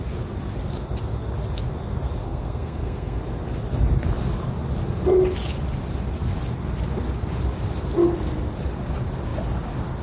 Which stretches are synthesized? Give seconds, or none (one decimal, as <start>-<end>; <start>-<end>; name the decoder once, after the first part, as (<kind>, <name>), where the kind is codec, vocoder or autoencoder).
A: 2.2-3.2 (codec, SNAC)

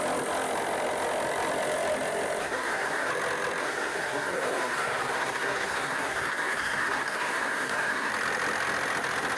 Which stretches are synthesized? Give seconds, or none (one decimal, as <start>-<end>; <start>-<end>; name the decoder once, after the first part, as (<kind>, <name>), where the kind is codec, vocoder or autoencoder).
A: 2.4-3.1 (codec, SNAC); 3.6-8.1